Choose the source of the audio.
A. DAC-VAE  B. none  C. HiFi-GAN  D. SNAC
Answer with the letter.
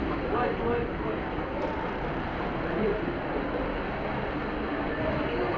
B